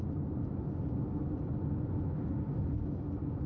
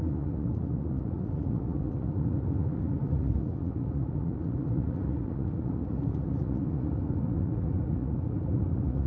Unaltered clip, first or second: first